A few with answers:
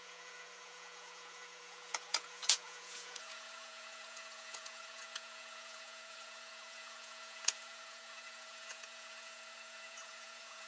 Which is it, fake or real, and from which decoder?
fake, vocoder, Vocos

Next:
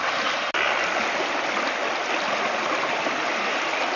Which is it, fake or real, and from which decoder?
real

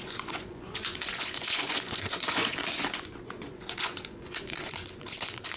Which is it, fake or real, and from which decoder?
fake, vocoder, Vocos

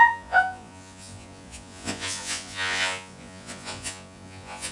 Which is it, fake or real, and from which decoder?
fake, vocoder, Vocos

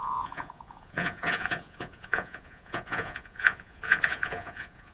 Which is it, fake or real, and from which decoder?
fake, vocoder, Vocos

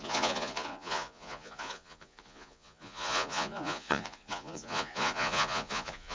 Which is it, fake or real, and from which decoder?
fake, vocoder, Vocos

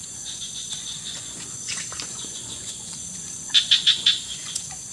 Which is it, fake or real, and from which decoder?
fake, vocoder, Vocos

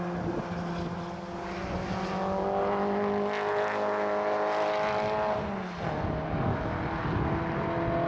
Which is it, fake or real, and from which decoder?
real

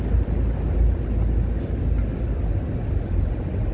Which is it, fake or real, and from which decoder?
real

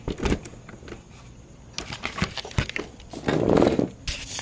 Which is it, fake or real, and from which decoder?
real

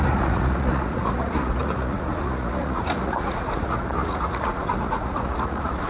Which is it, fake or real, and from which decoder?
fake, vocoder, Vocos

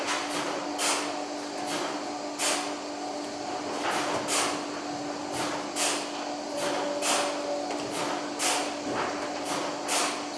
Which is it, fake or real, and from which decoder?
real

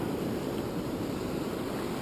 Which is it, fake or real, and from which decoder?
real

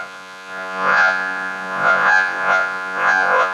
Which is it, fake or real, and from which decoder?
fake, vocoder, Vocos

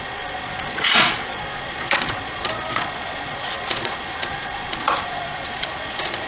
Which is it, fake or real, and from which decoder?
fake, vocoder, Vocos